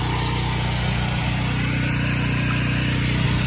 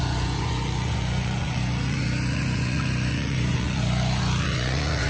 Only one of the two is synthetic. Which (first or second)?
second